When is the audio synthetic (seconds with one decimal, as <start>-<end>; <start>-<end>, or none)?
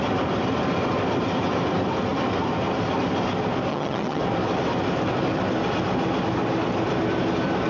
3.7-4.2